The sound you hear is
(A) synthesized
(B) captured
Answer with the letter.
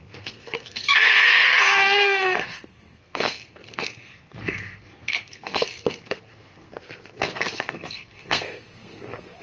A